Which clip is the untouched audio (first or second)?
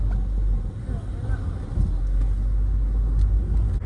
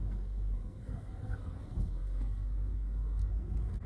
first